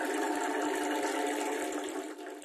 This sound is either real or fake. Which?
real